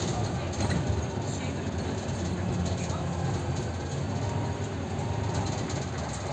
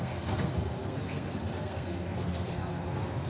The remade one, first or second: second